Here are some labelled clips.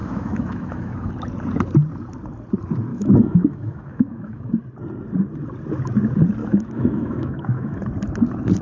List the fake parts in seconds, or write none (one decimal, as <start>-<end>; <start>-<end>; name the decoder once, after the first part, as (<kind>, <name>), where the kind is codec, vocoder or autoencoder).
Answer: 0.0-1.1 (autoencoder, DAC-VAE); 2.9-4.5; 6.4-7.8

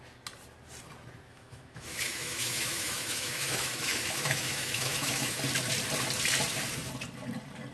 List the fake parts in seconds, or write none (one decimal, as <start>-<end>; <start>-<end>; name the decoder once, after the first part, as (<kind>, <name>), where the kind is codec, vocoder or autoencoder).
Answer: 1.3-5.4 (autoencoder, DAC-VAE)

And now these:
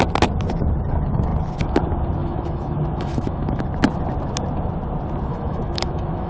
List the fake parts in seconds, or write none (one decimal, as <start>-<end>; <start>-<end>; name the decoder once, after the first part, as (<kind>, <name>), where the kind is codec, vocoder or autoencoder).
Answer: 2.2-3.6 (autoencoder, DAC-VAE); 5.3-6.3

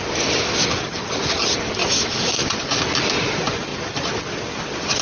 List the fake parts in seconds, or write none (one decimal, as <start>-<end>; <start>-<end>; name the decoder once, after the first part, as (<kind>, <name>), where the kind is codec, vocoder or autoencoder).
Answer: 1.8-2.5 (autoencoder, DAC-VAE)

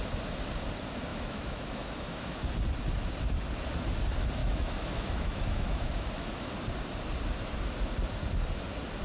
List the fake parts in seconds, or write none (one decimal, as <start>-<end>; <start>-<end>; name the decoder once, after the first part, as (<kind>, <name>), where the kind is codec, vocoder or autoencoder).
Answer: 1.1-2.4 (autoencoder, DAC-VAE); 4.4-6.5

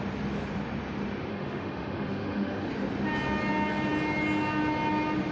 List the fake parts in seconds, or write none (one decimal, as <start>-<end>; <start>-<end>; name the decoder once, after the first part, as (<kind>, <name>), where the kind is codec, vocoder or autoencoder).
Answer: 1.3-2.7 (autoencoder, DAC-VAE)

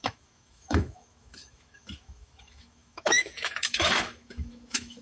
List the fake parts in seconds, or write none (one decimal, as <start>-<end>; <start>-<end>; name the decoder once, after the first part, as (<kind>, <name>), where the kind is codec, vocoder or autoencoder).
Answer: 0.0-5.0 (autoencoder, DAC-VAE)

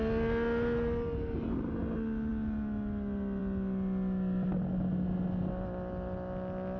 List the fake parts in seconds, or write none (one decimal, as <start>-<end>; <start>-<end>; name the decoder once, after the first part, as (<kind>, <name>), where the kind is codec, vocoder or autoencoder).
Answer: none